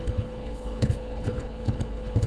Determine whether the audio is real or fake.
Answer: fake